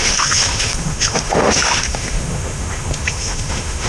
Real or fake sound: fake